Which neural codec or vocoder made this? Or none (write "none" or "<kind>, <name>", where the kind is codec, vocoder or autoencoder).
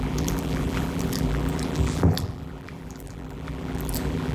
vocoder, BigVGAN v2